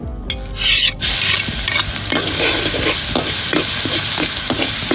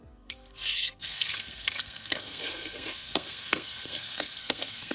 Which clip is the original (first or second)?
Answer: first